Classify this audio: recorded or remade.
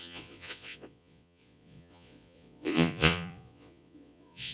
remade